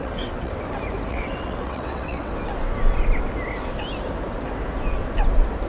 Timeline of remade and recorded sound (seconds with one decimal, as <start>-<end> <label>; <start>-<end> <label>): 0.0-0.5 remade; 0.5-1.1 recorded; 1.1-2.3 remade; 2.3-5.7 recorded